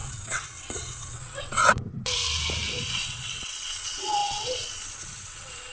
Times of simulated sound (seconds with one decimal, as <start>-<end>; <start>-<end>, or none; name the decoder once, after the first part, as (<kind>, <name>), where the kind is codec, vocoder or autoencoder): 0.0-2.2 (vocoder, WaveNeXt); 2.9-5.7